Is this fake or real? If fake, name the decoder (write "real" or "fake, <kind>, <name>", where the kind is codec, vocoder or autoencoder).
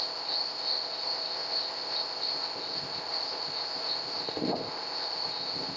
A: fake, codec, ZipCodec